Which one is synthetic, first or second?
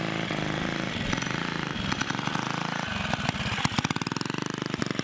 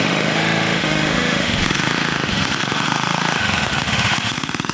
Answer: second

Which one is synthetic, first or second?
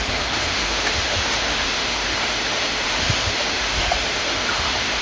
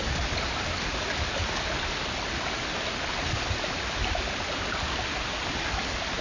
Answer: first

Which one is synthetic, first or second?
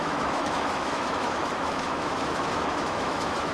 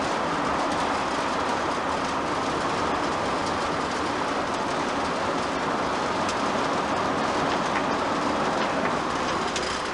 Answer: first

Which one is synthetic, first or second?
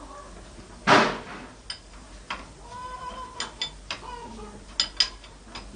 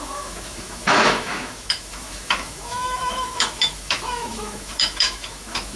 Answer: second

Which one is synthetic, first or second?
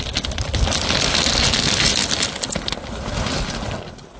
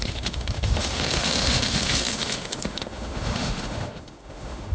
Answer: second